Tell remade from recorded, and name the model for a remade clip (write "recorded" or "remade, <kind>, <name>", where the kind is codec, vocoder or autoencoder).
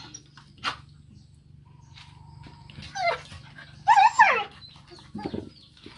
recorded